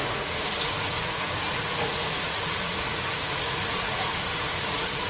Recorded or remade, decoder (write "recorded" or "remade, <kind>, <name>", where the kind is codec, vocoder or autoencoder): remade, vocoder, Vocos